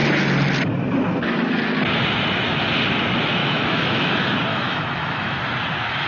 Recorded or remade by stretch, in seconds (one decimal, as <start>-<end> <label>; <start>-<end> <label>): 0.0-3.4 recorded; 3.4-4.1 remade; 4.1-4.5 recorded; 4.5-5.4 remade; 5.4-6.1 recorded